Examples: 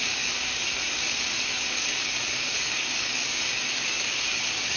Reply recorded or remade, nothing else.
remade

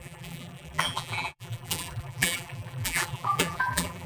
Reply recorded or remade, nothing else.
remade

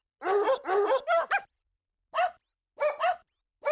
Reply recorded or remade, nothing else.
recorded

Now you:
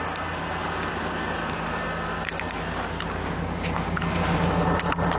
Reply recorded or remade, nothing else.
recorded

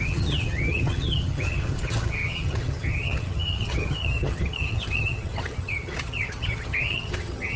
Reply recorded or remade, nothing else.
remade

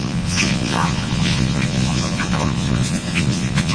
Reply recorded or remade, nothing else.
remade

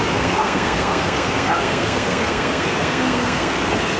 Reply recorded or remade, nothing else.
remade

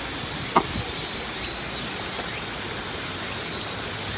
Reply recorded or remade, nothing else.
recorded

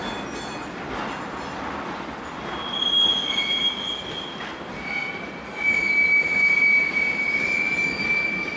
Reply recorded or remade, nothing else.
recorded